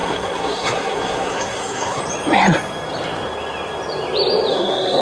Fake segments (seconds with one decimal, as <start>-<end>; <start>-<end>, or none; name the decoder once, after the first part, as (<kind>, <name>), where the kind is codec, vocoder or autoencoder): 0.0-2.0 (codec, SNAC); 4.5-5.0